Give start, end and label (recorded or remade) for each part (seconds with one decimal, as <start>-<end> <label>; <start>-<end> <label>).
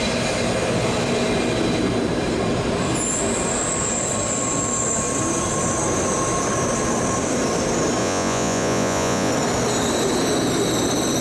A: 0.0-8.0 recorded; 8.0-9.3 remade; 9.3-11.2 recorded